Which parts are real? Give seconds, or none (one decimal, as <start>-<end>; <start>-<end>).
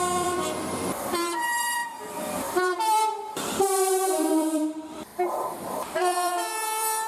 none